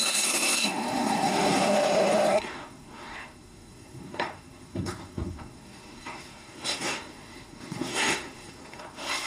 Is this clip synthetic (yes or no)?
yes